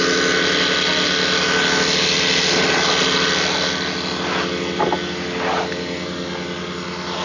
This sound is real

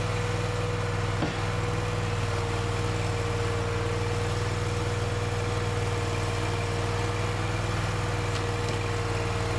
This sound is real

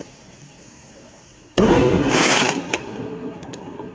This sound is fake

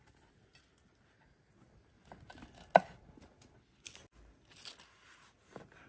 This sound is real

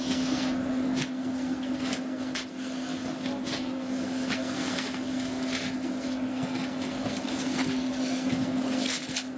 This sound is fake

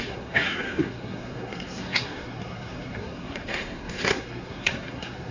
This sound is fake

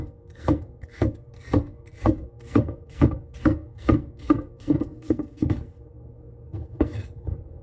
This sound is fake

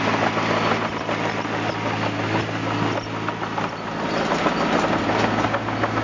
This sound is real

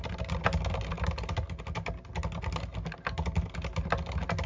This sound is real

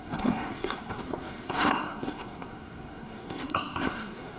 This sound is fake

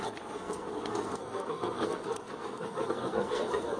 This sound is fake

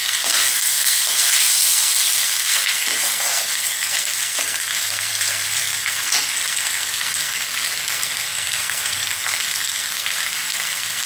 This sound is fake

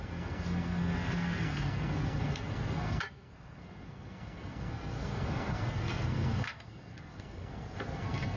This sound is fake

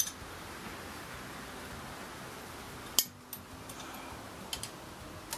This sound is real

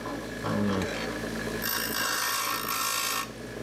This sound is real